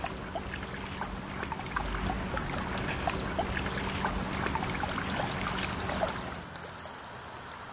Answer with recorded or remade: recorded